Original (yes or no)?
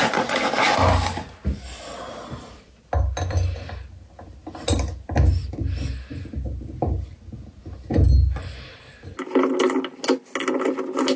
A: yes